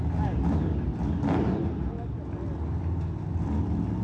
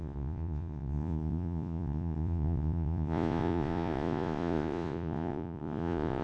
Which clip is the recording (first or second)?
first